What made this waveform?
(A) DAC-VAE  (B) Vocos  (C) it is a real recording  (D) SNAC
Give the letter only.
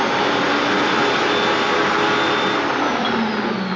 C